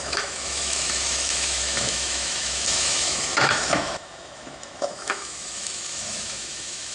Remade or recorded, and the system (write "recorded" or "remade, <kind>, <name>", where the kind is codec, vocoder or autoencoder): remade, autoencoder, DAC-VAE